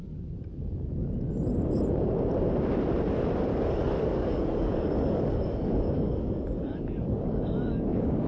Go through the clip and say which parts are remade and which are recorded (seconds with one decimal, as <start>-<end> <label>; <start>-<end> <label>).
0.0-3.5 recorded; 3.5-8.3 remade